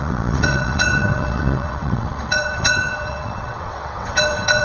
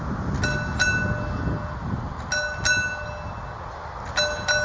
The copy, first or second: first